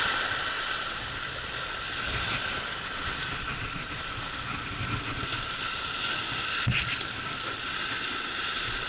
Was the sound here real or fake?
real